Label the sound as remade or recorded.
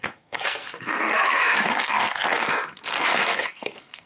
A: remade